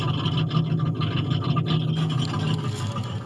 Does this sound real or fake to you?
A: real